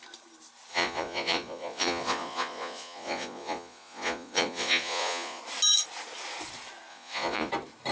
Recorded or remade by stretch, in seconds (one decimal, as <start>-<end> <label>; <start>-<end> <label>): 0.0-0.7 recorded; 0.7-5.4 remade; 5.4-6.9 recorded; 6.9-7.5 remade; 7.5-7.9 recorded